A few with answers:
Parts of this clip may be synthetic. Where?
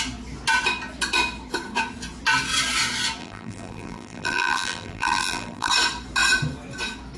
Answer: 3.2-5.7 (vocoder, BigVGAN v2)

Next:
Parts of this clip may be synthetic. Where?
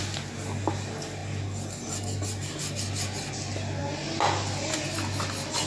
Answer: none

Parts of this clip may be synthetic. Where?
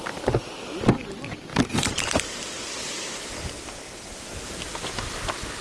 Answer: 0.0-4.7 (vocoder, BigVGAN v2)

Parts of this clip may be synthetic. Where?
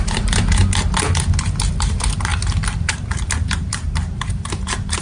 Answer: 0.0-0.6 (vocoder, BigVGAN v2); 1.9-2.3; 2.9-5.0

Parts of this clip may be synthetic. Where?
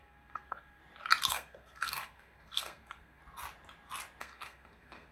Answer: 0.0-0.8 (codec, SNAC); 1.3-3.2; 4.2-5.1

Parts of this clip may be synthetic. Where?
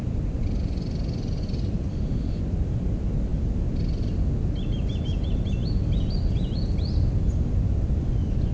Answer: 1.9-2.4 (autoencoder, DAC-VAE)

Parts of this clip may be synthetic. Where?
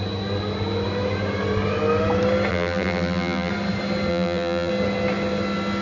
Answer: 2.5-3.5 (vocoder, BigVGAN v2); 4.1-4.7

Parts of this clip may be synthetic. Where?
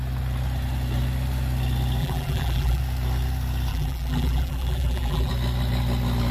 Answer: 2.0-2.8 (vocoder, BigVGAN v2); 3.7-5.3